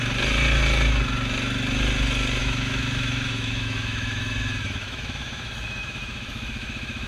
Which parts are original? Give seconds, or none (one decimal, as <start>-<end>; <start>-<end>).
0.0-2.4